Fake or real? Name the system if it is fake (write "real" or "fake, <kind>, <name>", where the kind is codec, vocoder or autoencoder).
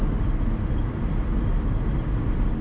real